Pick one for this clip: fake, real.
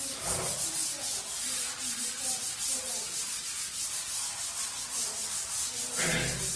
real